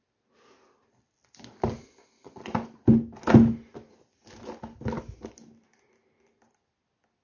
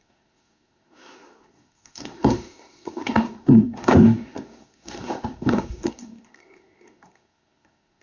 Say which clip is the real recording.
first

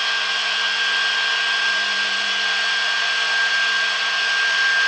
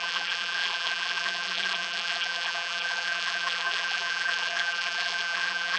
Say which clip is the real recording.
first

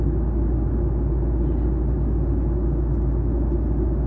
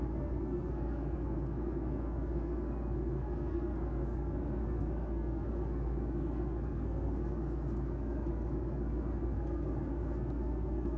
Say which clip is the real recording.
first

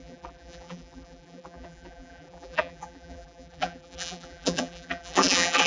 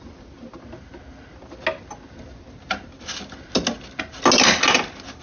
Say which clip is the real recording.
second